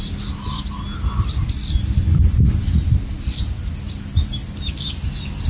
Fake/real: real